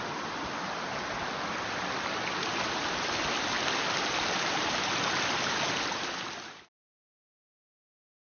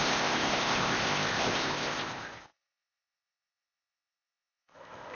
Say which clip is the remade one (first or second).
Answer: second